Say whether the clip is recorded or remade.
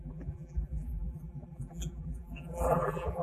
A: remade